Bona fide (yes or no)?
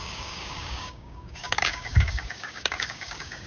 no